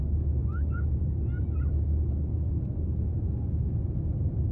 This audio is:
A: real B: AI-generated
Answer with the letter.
A